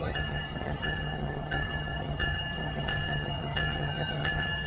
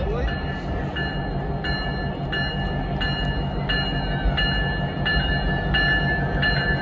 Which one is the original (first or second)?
second